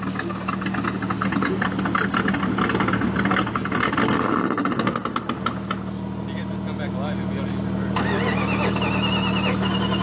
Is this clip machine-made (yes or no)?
no